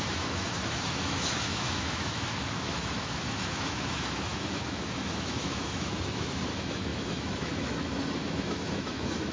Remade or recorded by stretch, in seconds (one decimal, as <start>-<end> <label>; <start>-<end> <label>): 0.0-9.3 remade